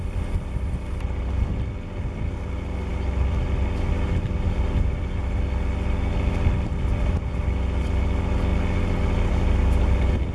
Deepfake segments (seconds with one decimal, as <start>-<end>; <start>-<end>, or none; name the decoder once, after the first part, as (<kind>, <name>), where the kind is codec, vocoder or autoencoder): none